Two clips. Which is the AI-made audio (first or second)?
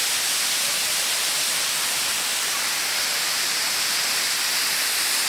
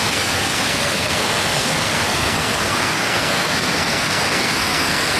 second